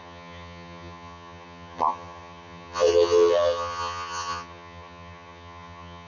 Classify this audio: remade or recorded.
remade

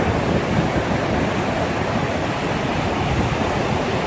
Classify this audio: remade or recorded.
recorded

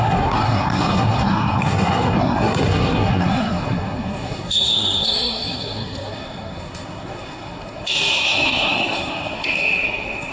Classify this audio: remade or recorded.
remade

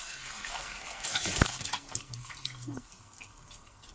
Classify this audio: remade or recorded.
remade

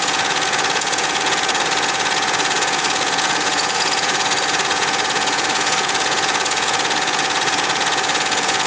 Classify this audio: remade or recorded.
remade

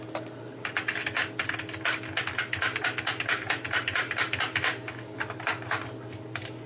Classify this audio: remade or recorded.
recorded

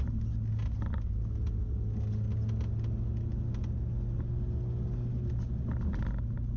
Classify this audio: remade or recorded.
recorded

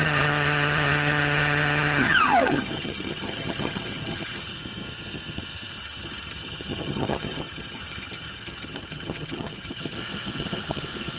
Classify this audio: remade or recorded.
remade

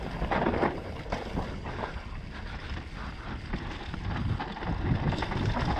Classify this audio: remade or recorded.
recorded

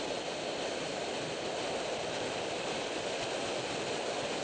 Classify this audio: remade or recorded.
recorded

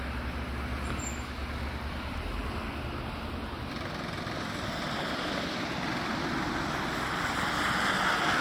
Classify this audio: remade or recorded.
recorded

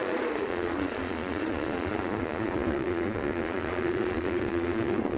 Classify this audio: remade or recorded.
remade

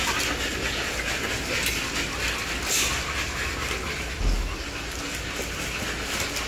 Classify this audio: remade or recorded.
recorded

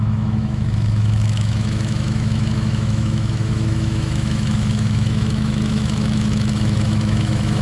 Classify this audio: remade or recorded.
remade